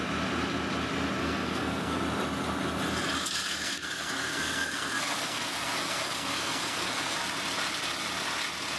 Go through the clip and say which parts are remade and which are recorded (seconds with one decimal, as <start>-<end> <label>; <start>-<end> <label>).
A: 0.0-1.2 recorded; 1.2-2.0 remade; 2.0-3.2 recorded; 3.2-7.2 remade; 7.2-8.8 recorded